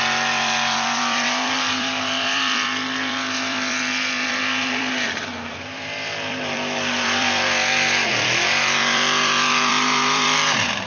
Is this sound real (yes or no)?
no